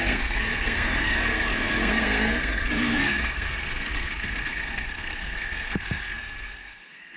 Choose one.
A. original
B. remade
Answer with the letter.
B